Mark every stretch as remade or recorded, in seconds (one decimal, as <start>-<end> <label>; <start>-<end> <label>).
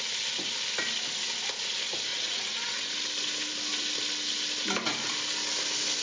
0.0-2.1 recorded; 2.1-2.9 remade; 2.9-6.0 recorded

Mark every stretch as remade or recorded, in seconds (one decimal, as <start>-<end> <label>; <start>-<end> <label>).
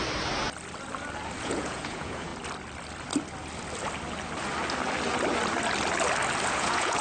0.0-1.4 recorded; 1.4-2.3 remade; 2.3-6.5 recorded; 6.5-7.0 remade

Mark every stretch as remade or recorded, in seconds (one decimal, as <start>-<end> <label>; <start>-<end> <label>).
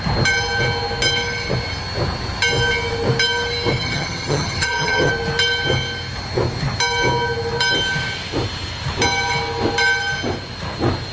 0.0-3.8 recorded; 3.8-5.1 remade; 5.1-11.1 recorded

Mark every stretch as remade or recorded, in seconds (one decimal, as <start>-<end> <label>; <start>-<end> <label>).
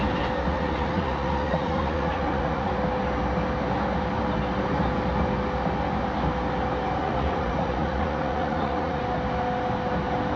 0.0-0.5 recorded; 0.5-2.7 remade; 2.7-7.0 recorded; 7.0-9.0 remade; 9.0-10.4 recorded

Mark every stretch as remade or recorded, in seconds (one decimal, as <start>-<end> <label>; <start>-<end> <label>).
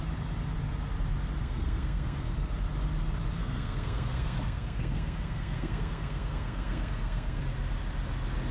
0.0-1.4 recorded; 1.4-2.5 remade; 2.5-3.4 recorded; 3.4-7.4 remade; 7.4-8.5 recorded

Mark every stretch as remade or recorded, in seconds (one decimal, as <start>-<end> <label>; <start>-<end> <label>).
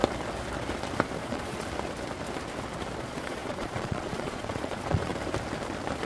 0.0-1.2 recorded; 1.2-1.6 remade; 1.6-3.0 recorded; 3.0-5.1 remade; 5.1-6.1 recorded